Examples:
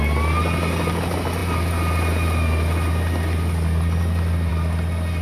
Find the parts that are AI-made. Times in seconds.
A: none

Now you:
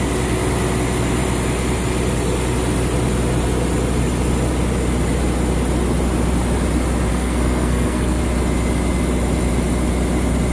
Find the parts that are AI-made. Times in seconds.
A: 7.1-8.2 (codec, SNAC)